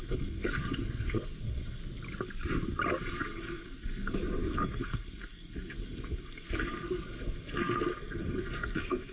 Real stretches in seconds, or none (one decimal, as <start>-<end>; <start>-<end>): 1.8-3.0